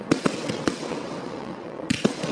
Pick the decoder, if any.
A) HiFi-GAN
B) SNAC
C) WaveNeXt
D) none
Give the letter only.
C